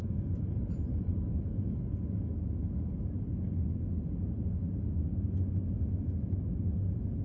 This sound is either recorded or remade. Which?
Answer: recorded